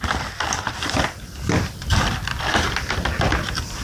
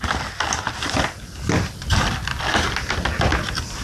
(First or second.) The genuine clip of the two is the second